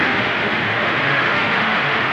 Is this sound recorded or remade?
remade